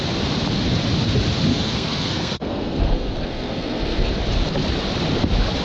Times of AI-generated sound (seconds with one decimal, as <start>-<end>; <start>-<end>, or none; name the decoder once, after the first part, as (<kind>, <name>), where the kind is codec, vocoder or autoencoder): 1.5-4.1 (codec, SNAC)